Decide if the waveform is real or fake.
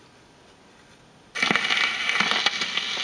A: real